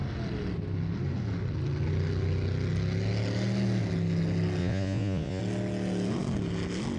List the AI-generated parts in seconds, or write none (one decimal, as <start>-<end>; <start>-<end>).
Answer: 4.6-5.4